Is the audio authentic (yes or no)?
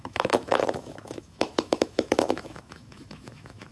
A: no